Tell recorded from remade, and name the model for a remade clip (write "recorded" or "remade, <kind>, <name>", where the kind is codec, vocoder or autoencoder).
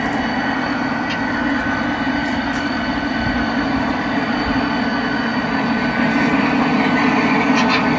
recorded